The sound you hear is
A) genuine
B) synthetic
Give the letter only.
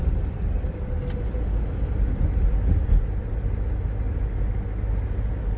A